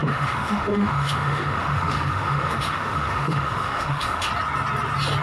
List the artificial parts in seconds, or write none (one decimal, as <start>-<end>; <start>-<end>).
0.0-4.3